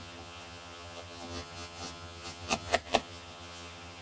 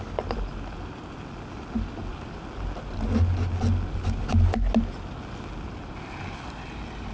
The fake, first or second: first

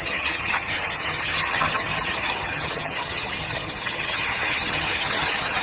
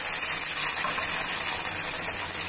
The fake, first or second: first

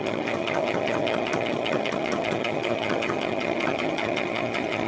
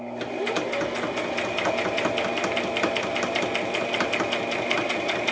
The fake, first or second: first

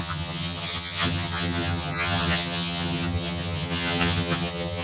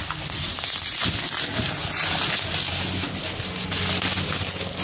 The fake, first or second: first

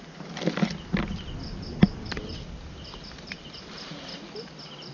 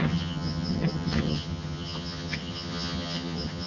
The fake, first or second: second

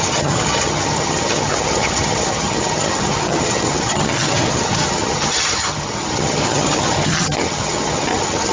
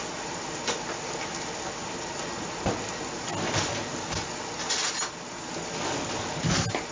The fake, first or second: first